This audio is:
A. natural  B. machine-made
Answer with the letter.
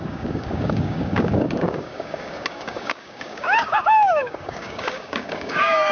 B